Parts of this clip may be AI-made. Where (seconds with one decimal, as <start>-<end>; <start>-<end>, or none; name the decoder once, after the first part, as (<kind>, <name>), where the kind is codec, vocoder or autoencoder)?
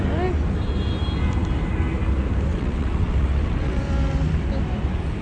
2.5-3.8 (vocoder, WaveNeXt)